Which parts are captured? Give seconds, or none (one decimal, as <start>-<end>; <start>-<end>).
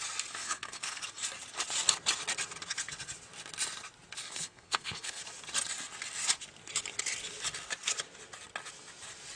0.0-0.4; 1.0-4.2; 5.2-9.4